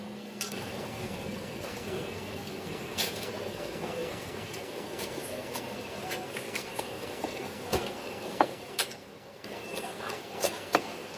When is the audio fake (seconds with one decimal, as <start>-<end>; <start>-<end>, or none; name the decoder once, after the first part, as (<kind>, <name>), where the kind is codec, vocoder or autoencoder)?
0.0-11.2 (codec, SNAC)